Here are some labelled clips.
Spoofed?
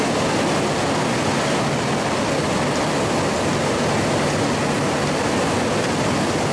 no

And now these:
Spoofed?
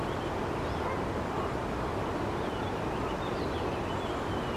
no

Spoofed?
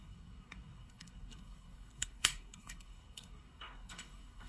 yes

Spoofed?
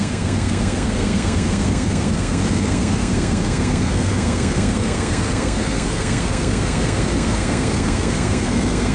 yes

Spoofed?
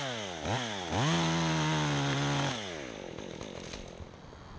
no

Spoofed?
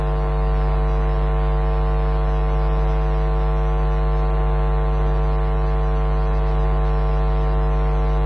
no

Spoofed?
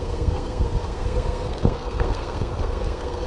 yes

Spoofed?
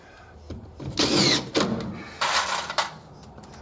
no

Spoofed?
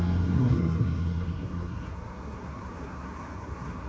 yes